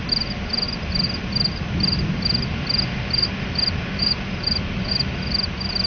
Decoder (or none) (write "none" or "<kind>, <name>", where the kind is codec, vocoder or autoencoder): none